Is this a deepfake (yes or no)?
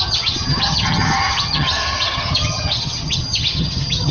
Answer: yes